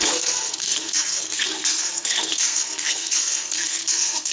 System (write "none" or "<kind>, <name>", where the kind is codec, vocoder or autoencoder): codec, SNAC